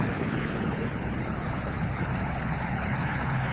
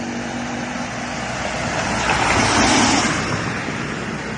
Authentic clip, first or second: second